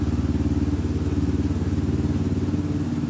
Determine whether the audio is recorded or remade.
recorded